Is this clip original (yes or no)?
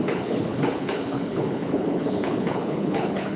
no